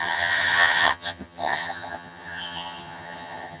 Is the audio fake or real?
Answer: fake